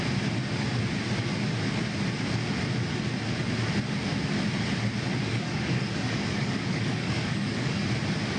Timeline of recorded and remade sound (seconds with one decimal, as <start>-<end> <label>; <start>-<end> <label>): 0.0-5.2 recorded; 5.2-7.9 remade; 7.9-8.4 recorded